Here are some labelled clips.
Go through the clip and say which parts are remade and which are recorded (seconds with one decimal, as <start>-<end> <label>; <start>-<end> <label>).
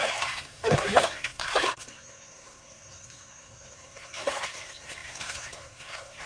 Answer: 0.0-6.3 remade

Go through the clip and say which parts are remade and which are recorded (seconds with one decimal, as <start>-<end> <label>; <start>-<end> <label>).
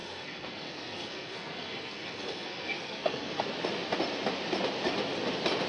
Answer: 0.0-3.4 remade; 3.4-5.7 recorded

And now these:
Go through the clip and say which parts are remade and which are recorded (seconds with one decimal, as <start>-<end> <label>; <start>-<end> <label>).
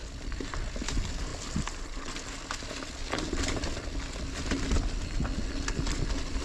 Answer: 0.0-6.4 recorded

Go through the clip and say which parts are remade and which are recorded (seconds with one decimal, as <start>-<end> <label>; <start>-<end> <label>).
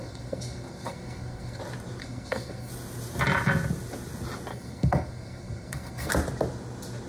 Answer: 0.0-1.6 remade; 1.6-2.0 recorded; 2.0-2.7 remade; 2.7-4.5 recorded; 4.5-6.1 remade; 6.1-7.1 recorded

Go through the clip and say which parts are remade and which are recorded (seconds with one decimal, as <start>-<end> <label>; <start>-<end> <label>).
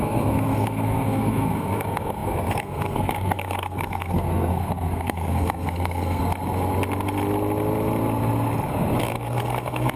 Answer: 0.0-6.2 remade; 6.2-9.0 recorded; 9.0-10.0 remade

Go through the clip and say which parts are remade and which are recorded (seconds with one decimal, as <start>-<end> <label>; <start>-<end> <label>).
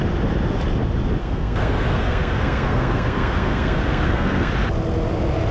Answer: 0.0-1.2 recorded; 1.2-4.5 remade; 4.5-5.5 recorded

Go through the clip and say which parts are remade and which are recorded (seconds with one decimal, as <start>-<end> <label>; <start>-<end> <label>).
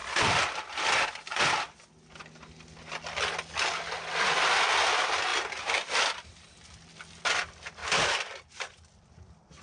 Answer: 0.0-9.6 recorded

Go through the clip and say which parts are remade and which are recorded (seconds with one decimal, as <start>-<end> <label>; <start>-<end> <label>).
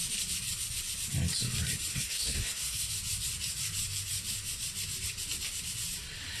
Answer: 0.0-1.9 recorded; 1.9-2.9 remade; 2.9-6.4 recorded